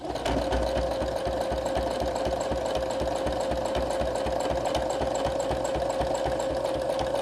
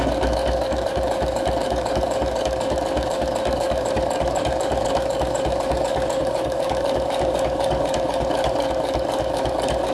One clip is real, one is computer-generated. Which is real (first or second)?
first